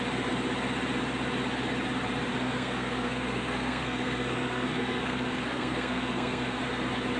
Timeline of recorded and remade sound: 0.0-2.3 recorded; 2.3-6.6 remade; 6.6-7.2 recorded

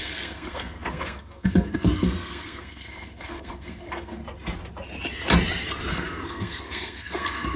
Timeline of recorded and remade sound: 0.0-4.2 remade; 4.2-5.9 recorded; 5.9-7.6 remade

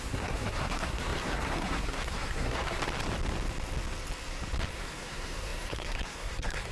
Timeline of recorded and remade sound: 0.0-2.8 remade; 2.8-4.7 recorded; 4.7-6.7 remade

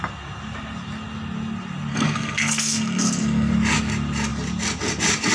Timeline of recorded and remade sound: 0.0-1.9 recorded; 1.9-3.5 remade; 3.5-5.3 recorded

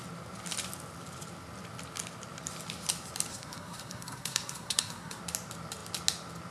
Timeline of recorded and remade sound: 0.0-3.3 recorded; 3.3-5.2 remade; 5.2-6.5 recorded